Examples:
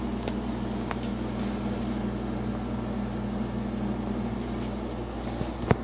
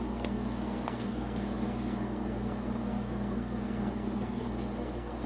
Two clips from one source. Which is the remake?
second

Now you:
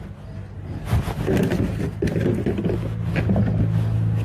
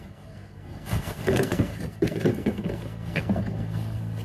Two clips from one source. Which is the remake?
second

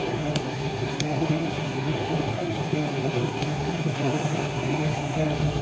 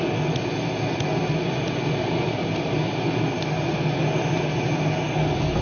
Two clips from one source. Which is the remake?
first